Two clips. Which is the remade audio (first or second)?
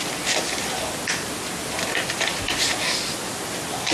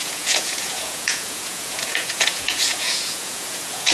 second